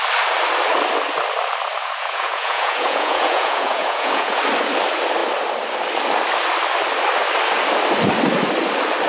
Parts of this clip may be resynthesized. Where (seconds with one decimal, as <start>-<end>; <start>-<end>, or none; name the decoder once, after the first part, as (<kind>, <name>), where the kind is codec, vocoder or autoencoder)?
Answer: 1.8-4.4 (vocoder, Vocos)